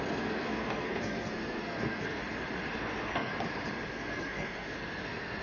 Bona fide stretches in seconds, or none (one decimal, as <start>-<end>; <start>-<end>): 2.2-2.8; 3.3-3.9